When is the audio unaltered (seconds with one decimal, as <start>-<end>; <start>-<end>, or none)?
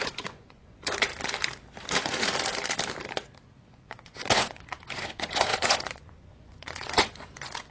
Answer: 1.1-3.6